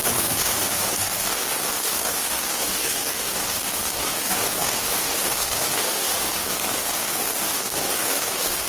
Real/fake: fake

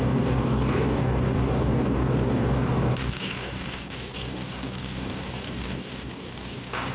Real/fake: fake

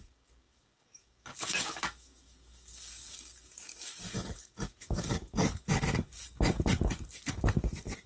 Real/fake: fake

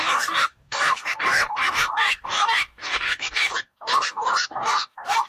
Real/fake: fake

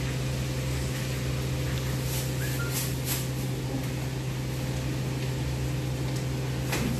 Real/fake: real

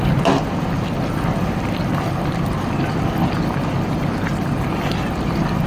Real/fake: real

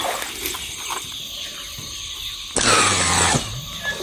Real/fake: real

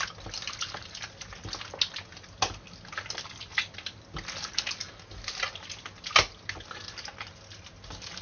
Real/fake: real